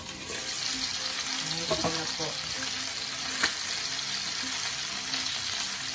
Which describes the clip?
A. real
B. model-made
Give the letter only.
A